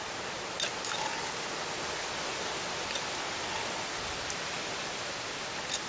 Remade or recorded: recorded